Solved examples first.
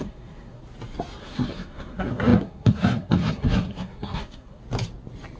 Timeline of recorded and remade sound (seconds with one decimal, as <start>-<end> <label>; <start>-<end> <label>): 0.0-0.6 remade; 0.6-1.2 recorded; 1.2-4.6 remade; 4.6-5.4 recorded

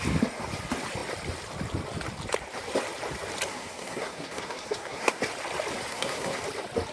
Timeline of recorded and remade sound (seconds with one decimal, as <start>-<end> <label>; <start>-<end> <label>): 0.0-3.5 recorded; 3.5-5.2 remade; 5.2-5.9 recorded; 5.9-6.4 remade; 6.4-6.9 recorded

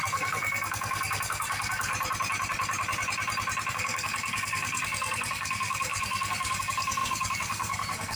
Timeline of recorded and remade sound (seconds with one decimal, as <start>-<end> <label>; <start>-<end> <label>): 0.0-1.9 remade; 1.9-3.7 recorded; 3.7-8.2 remade